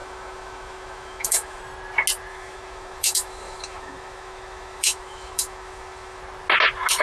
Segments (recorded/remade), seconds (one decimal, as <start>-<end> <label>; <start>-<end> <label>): 0.0-1.6 remade; 1.6-2.3 recorded; 2.3-6.2 remade; 6.2-7.0 recorded